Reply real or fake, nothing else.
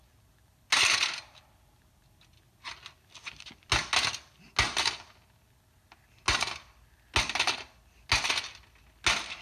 real